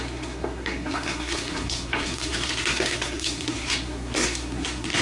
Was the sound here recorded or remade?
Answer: remade